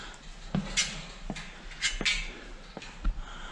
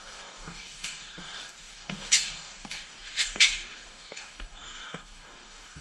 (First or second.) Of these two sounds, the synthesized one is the second